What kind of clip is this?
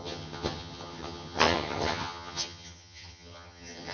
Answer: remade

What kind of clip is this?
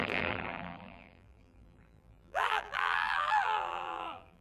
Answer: remade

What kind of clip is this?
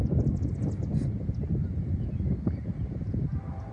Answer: recorded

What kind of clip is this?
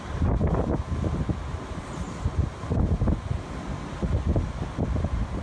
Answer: recorded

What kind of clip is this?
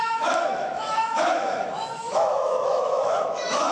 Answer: remade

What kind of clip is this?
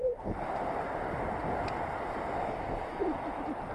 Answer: recorded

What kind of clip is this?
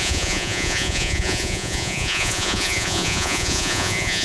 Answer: remade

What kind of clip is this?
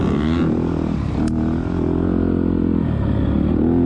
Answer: recorded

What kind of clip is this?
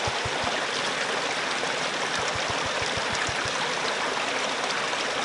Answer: recorded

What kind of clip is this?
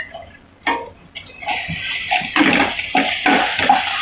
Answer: recorded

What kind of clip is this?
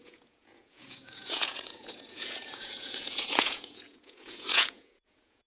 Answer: remade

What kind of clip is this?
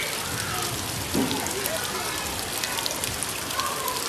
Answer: recorded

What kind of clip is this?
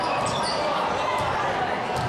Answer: recorded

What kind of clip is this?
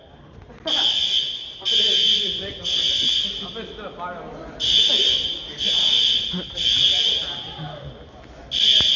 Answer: recorded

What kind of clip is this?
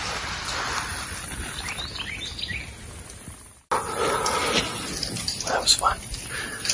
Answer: recorded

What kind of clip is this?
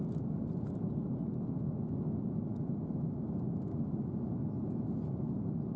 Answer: recorded